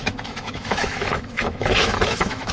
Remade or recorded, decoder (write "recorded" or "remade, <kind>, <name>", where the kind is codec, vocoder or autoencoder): remade, autoencoder, DAC-VAE